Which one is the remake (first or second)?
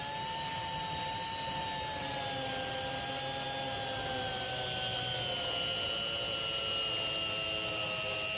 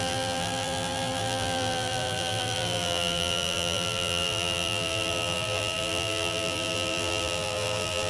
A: second